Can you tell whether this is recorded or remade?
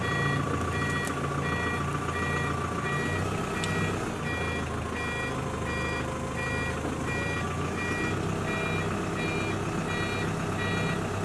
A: recorded